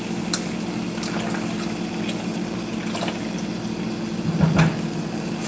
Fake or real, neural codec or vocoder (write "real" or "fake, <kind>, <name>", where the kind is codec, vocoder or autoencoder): real